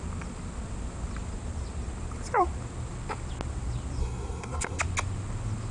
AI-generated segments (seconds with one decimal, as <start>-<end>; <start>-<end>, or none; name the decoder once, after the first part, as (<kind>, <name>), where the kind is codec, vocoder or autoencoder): 4.0-4.8 (codec, SNAC)